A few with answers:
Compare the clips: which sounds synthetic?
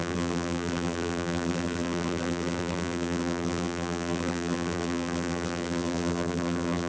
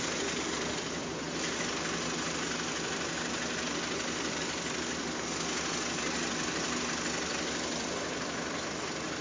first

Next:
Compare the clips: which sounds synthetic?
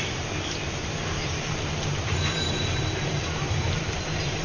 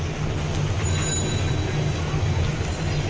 first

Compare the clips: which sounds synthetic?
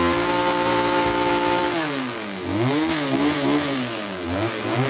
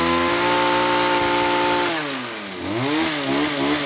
first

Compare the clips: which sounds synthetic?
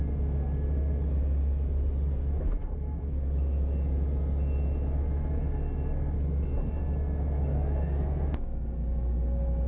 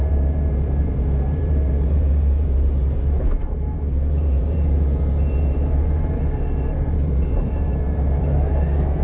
second